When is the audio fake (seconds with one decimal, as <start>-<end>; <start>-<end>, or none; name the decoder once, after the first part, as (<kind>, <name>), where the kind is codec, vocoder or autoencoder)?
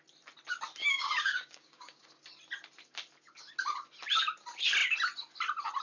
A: 0.8-2.0 (codec, DAC)